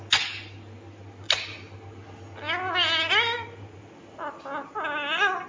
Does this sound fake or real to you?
real